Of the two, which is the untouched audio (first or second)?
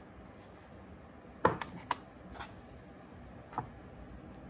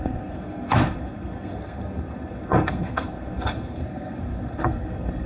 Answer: first